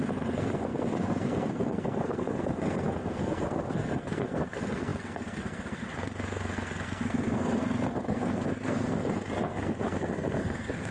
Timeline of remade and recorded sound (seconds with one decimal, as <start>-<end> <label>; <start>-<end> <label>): 0.0-10.9 remade